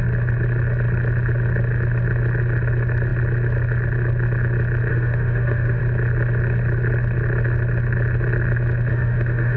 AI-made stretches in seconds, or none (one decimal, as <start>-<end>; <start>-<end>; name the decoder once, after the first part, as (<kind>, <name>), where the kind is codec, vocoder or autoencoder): 4.9-5.8 (autoencoder, DAC-VAE); 8.9-9.6